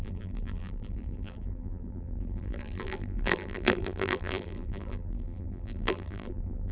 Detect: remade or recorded remade